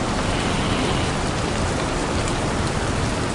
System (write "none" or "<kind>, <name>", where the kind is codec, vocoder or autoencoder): none